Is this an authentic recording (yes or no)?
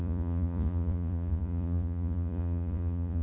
no